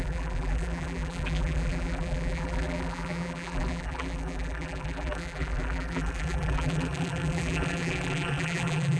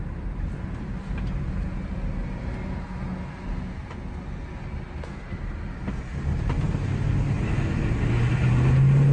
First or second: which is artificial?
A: first